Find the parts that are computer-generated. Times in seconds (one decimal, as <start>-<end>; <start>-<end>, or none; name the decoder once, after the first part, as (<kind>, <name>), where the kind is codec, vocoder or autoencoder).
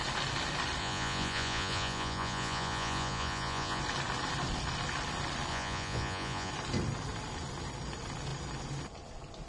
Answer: 0.8-3.8 (vocoder, Vocos); 5.5-6.5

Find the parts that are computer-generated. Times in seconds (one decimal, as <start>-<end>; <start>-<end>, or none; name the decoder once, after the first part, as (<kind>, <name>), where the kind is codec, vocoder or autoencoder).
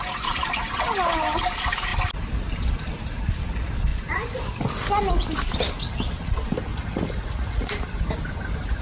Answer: 6.7-7.7 (vocoder, Vocos)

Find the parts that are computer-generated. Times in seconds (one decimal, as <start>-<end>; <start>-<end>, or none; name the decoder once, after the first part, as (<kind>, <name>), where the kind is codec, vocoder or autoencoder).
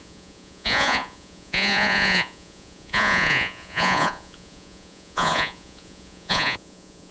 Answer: 0.0-7.1 (vocoder, Vocos)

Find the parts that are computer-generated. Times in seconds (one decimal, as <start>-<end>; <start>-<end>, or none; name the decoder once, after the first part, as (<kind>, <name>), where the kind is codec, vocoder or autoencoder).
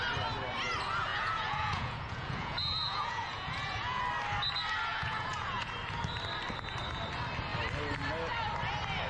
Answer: 1.1-4.0 (vocoder, Vocos); 4.9-5.7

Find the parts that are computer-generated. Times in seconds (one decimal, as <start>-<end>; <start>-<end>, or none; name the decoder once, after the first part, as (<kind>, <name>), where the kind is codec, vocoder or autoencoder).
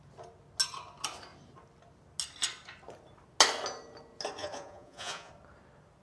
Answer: 4.4-5.3 (vocoder, Vocos)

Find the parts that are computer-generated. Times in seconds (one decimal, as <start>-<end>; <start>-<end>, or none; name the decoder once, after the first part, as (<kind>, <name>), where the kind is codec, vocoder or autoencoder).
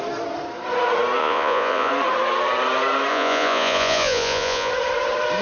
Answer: 1.2-1.9 (vocoder, Vocos); 3.1-4.7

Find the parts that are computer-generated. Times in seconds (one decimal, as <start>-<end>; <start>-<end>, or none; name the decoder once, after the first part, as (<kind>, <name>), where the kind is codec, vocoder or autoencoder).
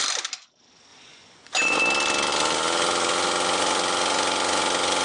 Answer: 0.9-1.8 (vocoder, Vocos)